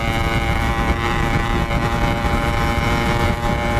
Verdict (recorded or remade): recorded